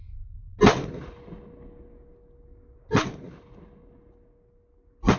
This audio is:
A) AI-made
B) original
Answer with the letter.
B